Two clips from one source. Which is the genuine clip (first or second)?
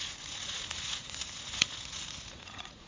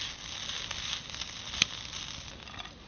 second